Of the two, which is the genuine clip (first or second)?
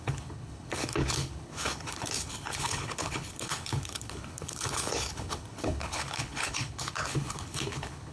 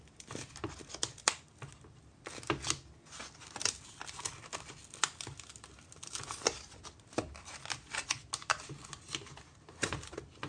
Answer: second